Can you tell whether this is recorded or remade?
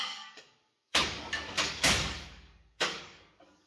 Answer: remade